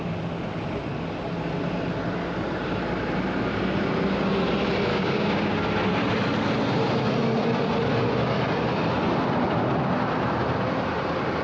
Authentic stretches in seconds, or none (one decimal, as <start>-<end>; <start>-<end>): 0.0-4.9; 5.6-11.4